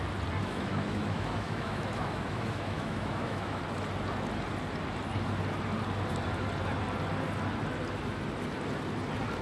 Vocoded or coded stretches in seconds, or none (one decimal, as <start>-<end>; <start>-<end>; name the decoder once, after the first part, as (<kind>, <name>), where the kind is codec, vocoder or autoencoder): 0.4-3.6 (autoencoder, DAC-VAE)